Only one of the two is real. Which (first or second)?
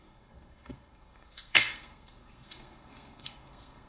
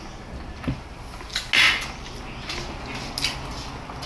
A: second